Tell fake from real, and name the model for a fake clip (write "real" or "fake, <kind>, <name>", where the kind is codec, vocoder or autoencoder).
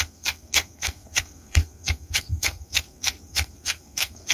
fake, codec, SNAC